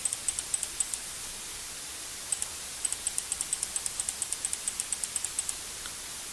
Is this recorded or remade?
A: recorded